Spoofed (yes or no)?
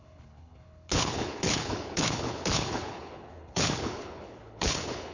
yes